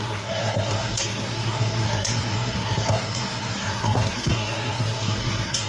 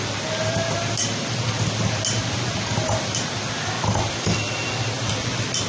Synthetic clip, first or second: first